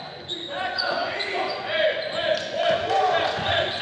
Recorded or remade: remade